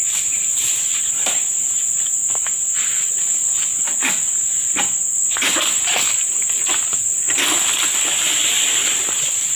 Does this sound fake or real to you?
fake